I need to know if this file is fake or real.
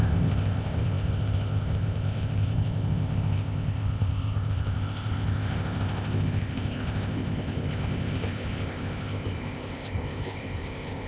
fake